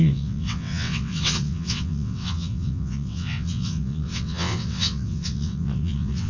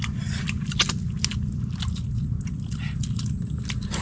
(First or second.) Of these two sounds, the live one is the second